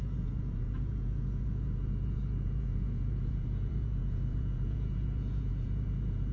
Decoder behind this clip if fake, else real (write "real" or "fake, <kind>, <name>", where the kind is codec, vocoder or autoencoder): fake, vocoder, Vocos